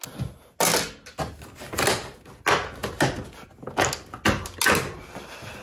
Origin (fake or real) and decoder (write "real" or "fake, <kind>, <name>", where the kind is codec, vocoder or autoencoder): real